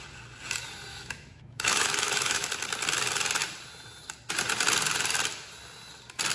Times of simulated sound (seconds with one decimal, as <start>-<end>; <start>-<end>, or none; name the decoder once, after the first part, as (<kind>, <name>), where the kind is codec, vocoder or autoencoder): 0.9-2.5 (autoencoder, DAC-VAE)